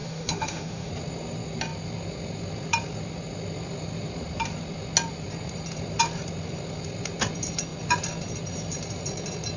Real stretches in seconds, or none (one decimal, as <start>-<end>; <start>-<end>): 0.9-9.6